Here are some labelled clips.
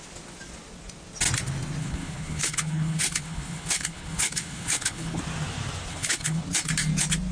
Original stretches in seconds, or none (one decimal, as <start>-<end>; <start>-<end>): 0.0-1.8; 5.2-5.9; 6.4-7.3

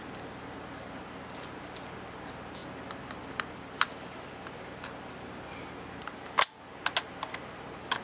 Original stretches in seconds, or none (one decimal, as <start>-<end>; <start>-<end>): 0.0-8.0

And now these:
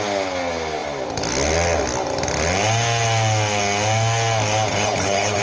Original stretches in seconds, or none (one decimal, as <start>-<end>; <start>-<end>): 0.0-4.7